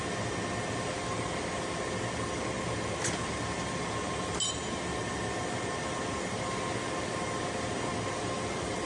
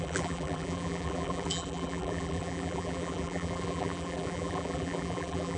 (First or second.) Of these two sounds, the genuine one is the first